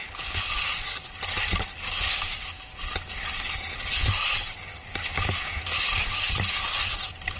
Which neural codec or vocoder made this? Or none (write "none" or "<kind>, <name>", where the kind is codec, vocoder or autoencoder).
none